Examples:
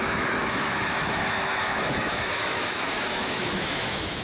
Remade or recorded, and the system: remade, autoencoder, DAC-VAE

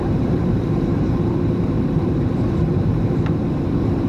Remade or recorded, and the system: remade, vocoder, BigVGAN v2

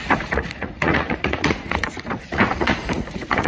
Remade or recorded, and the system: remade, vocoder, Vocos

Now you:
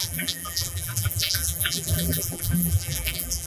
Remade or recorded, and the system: remade, vocoder, BigVGAN v2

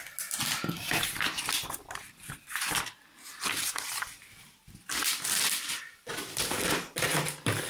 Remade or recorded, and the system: recorded